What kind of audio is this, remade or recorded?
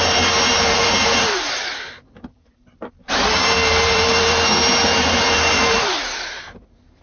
remade